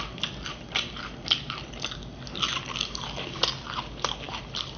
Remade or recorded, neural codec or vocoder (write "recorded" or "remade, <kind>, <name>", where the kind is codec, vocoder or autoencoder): recorded